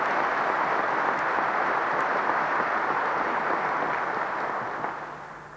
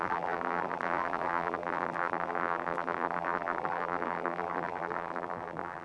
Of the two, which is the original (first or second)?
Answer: first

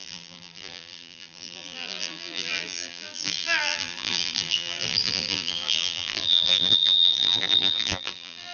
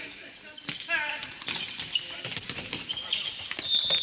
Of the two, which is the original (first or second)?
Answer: second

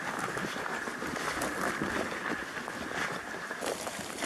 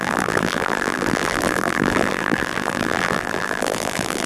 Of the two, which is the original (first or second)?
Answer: first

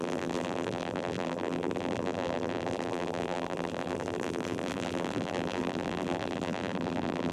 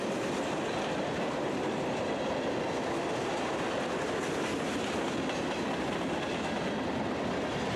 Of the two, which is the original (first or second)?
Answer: second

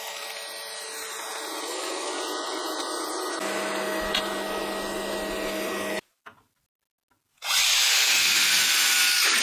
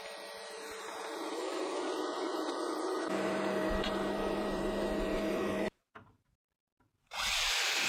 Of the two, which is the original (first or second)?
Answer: first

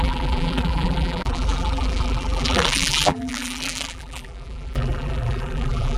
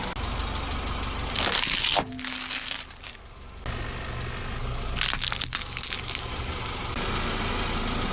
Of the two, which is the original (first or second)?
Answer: second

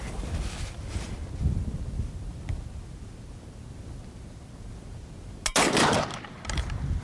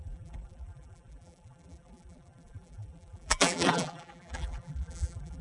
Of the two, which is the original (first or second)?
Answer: first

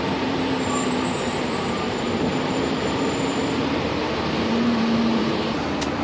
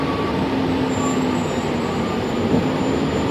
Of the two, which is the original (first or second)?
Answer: second